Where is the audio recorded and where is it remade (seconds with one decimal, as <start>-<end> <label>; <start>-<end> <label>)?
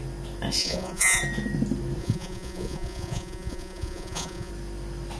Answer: 0.0-0.6 recorded; 0.6-1.2 remade; 1.2-2.0 recorded; 2.0-4.5 remade; 4.5-5.2 recorded